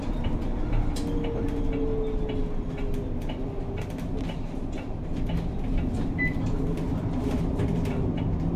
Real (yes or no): yes